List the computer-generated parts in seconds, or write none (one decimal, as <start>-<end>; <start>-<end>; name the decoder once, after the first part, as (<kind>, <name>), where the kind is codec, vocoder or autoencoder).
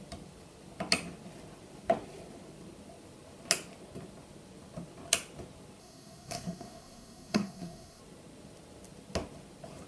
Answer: 5.8-8.0 (codec, SNAC)